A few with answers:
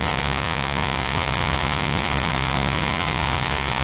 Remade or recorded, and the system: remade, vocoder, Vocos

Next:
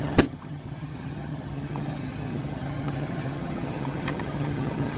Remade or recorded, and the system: remade, vocoder, HiFi-GAN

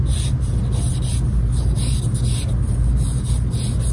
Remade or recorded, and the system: recorded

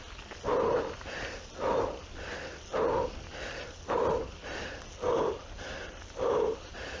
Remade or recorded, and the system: recorded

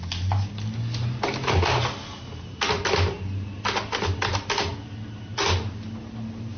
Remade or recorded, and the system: recorded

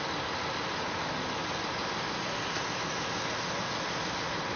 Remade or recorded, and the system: recorded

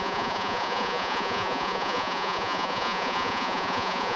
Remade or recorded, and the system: remade, vocoder, Vocos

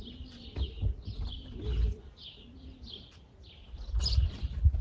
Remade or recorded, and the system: recorded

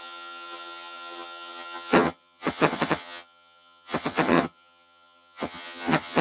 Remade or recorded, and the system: remade, vocoder, HiFi-GAN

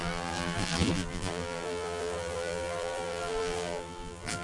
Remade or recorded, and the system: remade, vocoder, BigVGAN v2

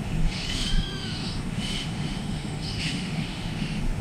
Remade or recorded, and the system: remade, autoencoder, DAC-VAE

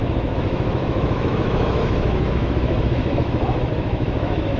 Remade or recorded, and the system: remade, autoencoder, DAC-VAE